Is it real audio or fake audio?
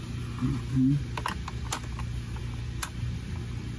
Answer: real